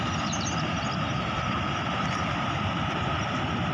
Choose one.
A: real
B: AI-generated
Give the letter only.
A